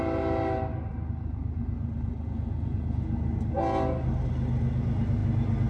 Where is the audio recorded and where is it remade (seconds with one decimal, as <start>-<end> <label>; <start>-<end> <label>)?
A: 0.0-5.7 recorded